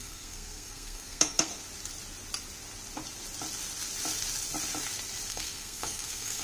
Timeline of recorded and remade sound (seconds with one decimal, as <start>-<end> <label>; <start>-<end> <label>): 0.0-1.5 remade; 1.5-5.3 recorded; 5.3-6.4 remade